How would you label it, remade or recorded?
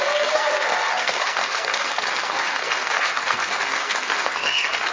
remade